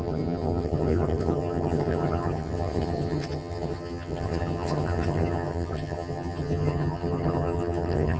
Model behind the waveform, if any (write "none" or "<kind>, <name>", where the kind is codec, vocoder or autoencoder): vocoder, HiFi-GAN